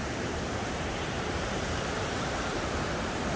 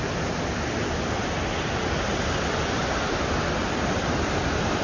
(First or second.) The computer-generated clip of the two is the first